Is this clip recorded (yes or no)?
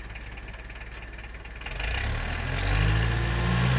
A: yes